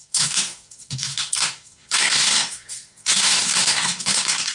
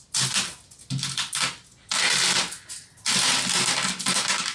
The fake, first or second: first